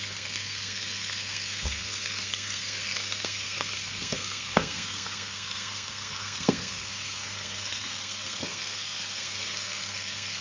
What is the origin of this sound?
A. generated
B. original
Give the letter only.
A